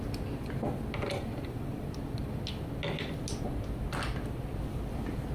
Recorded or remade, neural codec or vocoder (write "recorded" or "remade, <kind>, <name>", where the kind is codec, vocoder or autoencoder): recorded